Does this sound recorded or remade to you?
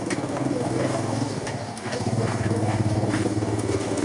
remade